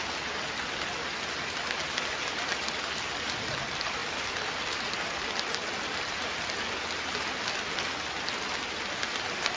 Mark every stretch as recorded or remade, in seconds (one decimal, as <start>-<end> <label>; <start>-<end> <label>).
0.0-4.0 recorded; 4.0-5.1 remade; 5.1-9.6 recorded